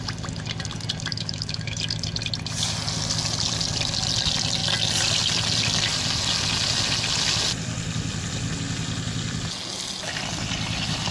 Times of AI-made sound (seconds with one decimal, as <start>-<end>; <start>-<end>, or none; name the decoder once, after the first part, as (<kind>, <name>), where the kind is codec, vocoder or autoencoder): 1.1-1.8 (autoencoder, DAC-VAE)

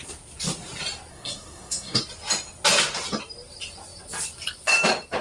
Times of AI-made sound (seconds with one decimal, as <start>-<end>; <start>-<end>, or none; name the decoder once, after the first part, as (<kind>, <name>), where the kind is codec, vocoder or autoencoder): 1.1-2.0 (codec, SNAC)

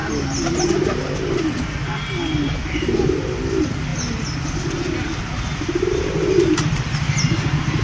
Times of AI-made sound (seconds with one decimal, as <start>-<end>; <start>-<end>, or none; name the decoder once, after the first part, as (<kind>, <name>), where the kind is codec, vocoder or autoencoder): 0.0-3.9 (vocoder, BigVGAN v2); 5.8-7.8

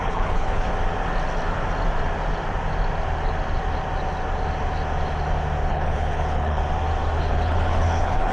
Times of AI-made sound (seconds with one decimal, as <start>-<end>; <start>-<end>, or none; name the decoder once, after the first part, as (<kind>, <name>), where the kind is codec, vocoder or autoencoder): 0.0-0.7 (codec, HILCodec); 5.7-6.6; 7.2-8.3

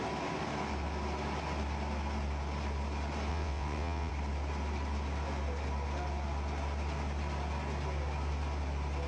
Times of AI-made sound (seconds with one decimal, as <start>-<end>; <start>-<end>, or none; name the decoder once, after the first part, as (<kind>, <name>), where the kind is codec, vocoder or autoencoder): 3.3-4.1 (vocoder, WaveNeXt)